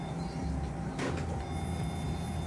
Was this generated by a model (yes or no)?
no